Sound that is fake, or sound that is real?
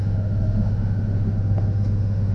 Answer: fake